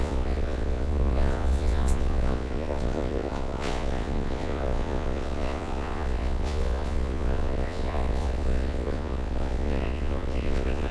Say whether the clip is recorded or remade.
remade